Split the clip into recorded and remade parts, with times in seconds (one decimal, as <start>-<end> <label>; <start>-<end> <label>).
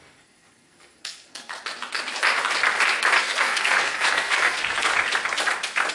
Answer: 0.0-1.5 remade; 1.5-3.2 recorded; 3.2-4.9 remade; 4.9-5.9 recorded